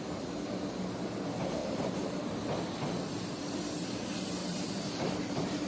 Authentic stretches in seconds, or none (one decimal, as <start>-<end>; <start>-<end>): 0.0-1.6; 2.8-4.4